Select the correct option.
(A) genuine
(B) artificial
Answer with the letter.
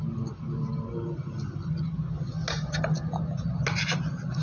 A